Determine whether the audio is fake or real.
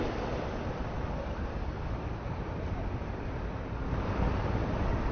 real